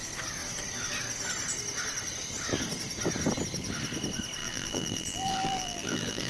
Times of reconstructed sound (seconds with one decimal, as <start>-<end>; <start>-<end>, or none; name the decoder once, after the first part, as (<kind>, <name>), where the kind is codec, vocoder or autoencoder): 4.4-6.3 (vocoder, BigVGAN v2)